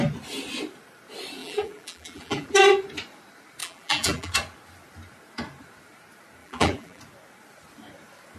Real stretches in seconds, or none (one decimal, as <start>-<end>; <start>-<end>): 0.0-1.4; 2.5-3.6; 4.3-6.4; 7.0-8.4